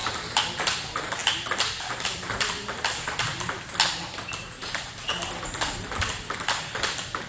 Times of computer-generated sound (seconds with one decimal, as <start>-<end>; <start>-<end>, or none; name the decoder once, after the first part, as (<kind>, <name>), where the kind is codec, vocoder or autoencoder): none